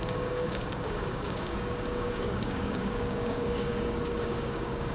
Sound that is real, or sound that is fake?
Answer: fake